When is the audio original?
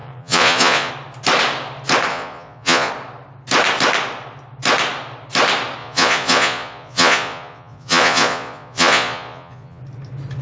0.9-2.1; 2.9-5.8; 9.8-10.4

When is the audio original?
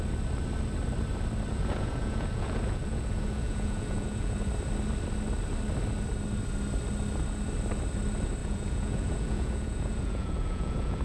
0.0-1.5; 4.5-8.4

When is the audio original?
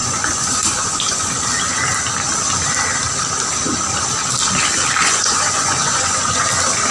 1.4-5.0; 6.4-6.9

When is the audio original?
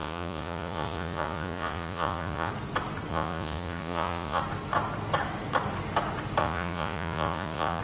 2.5-3.1; 4.4-6.4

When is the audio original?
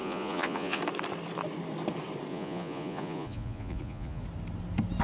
0.8-2.3; 4.2-5.0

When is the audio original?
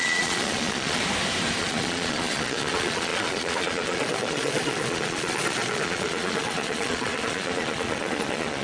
1.0-1.6